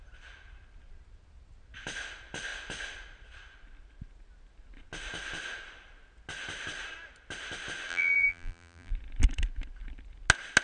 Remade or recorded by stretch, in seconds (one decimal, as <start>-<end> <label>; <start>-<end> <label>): 0.0-7.9 recorded; 7.9-8.9 remade; 8.9-10.6 recorded